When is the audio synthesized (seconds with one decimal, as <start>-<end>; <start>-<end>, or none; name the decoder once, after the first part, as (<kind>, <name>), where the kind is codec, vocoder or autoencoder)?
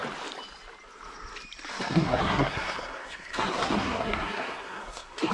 1.7-5.3 (codec, SNAC)